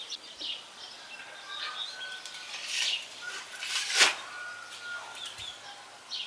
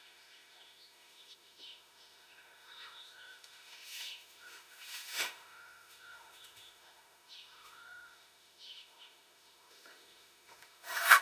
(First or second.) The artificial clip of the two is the second